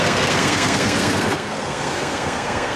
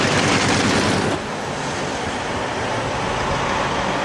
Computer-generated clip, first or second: first